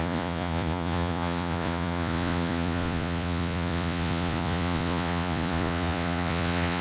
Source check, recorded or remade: remade